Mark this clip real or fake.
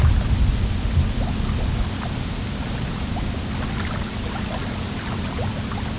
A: real